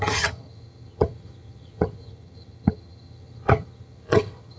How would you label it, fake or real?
fake